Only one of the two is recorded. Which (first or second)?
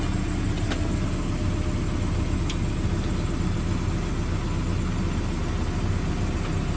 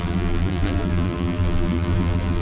first